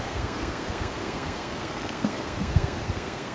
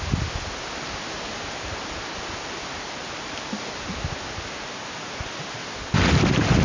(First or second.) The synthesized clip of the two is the first